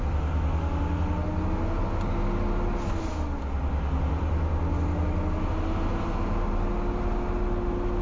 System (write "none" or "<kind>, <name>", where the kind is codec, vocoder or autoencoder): none